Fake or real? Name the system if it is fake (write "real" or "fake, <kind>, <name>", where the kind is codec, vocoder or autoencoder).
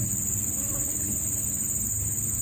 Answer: real